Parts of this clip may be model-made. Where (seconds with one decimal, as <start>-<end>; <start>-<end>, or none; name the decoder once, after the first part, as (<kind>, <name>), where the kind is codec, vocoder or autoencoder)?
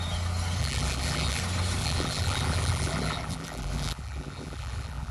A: 0.6-1.4 (vocoder, BigVGAN v2); 1.8-5.1